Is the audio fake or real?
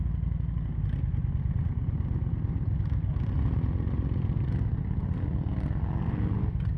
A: real